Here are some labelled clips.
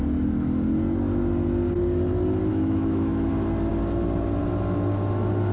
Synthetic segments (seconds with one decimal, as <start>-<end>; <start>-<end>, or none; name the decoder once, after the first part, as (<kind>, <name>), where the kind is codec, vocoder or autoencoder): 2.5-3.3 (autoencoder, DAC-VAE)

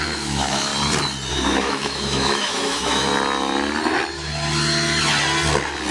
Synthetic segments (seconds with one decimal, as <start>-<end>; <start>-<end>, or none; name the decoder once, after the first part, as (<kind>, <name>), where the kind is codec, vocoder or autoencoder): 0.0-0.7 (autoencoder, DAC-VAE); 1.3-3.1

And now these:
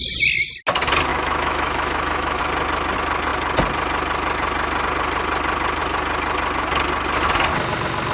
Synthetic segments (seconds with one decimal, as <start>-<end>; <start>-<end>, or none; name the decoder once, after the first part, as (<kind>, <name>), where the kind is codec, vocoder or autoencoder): 1.1-2.4 (autoencoder, DAC-VAE)

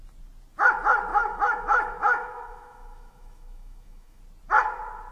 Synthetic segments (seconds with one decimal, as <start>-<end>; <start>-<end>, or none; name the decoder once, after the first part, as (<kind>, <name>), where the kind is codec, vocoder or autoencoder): 1.1-4.2 (autoencoder, DAC-VAE)